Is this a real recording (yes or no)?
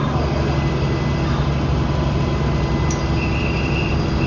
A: yes